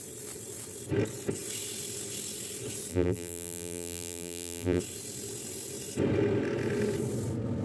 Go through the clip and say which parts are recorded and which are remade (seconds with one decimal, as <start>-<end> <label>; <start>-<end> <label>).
0.0-2.9 recorded; 2.9-4.8 remade; 4.8-7.6 recorded